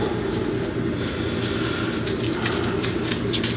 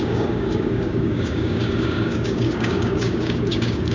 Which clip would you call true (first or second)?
first